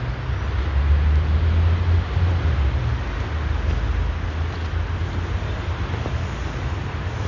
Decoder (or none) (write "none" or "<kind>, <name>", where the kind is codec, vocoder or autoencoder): none